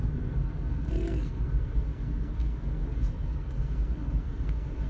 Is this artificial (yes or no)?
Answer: yes